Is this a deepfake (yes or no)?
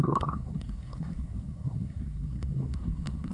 yes